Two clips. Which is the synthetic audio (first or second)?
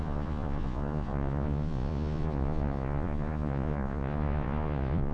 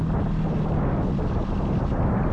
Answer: first